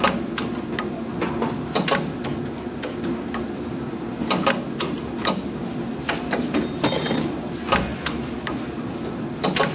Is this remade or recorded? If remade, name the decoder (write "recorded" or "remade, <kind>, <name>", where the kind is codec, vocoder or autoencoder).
recorded